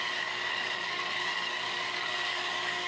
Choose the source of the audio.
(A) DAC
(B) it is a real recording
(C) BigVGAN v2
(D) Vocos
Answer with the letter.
A